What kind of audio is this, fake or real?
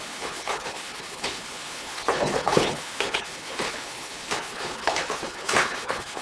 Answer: fake